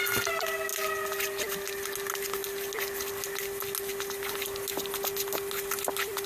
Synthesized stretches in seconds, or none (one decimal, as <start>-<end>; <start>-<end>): none